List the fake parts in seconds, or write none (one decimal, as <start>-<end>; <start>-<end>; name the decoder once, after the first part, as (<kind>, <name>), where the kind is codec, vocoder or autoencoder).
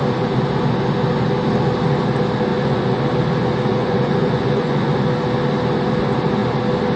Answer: 2.5-3.0 (vocoder, Vocos); 3.7-4.9